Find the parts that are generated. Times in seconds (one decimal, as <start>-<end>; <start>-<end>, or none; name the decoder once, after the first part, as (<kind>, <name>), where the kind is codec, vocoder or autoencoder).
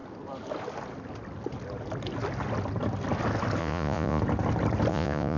3.6-4.2 (vocoder, Vocos); 4.9-5.4